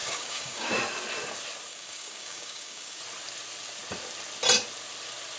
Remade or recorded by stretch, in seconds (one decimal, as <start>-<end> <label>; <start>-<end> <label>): 0.0-0.7 remade; 0.7-1.7 recorded; 1.7-3.0 remade; 3.0-5.4 recorded